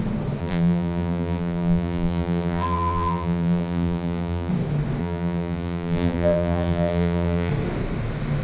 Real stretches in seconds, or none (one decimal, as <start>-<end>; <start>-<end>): 0.0-0.4; 4.5-5.0; 7.5-8.4